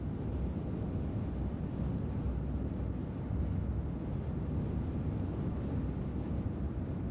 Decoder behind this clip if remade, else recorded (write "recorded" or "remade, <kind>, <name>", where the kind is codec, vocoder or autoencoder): recorded